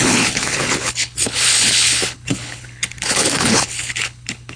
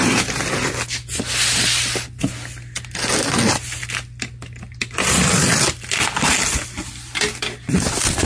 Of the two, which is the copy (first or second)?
first